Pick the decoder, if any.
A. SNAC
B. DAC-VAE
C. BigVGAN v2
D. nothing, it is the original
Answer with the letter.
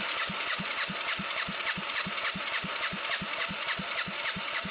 D